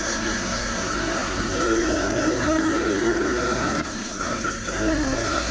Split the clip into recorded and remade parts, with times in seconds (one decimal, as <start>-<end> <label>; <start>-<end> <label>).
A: 0.0-5.5 remade